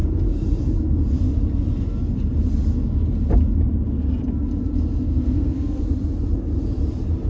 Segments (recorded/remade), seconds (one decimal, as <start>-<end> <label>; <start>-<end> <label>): 0.0-5.1 recorded; 5.1-5.8 remade; 5.8-7.3 recorded